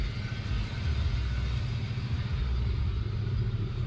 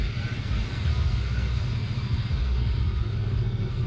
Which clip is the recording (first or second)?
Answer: first